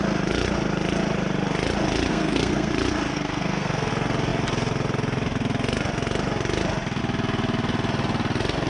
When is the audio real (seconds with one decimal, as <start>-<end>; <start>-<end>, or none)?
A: 0.0-2.1; 2.7-3.1; 3.9-8.7